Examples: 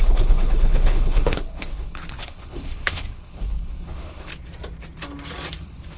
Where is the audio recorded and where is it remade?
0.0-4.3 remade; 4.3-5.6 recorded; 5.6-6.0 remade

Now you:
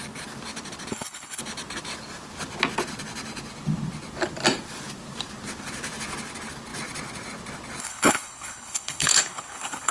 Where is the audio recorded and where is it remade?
0.0-0.9 recorded; 0.9-1.4 remade; 1.4-7.8 recorded; 7.8-9.9 remade

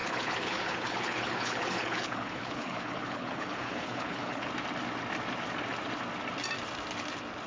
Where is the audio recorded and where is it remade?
0.0-4.5 remade; 4.5-7.5 recorded

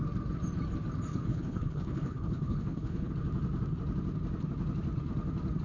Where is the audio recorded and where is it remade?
0.0-1.1 recorded; 1.1-3.1 remade; 3.1-5.6 recorded

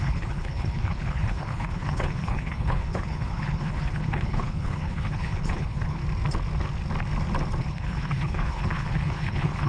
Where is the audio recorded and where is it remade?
0.0-6.0 remade; 6.0-7.6 recorded; 7.6-9.7 remade

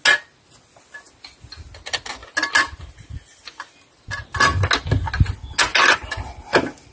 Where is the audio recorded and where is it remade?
0.0-6.9 recorded